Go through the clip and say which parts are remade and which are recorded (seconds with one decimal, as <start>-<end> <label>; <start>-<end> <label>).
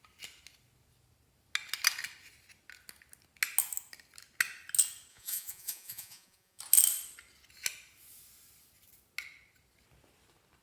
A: 0.0-5.1 recorded; 5.1-6.6 remade; 6.6-10.6 recorded